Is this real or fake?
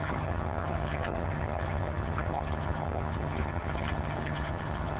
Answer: fake